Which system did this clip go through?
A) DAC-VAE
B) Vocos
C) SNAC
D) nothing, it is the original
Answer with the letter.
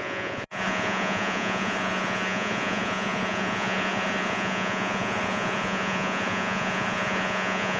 B